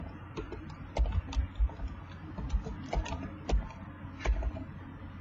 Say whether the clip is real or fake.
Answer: real